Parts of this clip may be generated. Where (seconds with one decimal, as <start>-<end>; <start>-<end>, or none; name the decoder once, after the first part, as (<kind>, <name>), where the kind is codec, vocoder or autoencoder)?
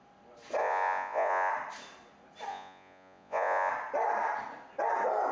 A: 0.6-1.5 (vocoder, Vocos); 2.5-3.7